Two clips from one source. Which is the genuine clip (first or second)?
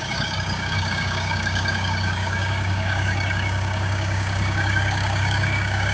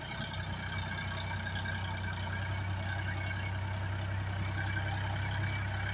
second